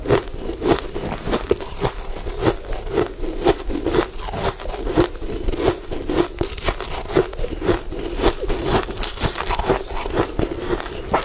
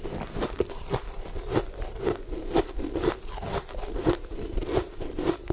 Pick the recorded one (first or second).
first